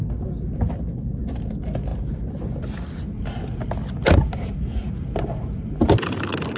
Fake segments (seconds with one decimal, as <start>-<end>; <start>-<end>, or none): none